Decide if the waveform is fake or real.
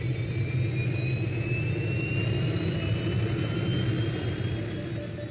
real